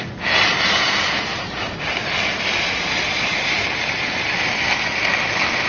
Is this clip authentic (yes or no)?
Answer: yes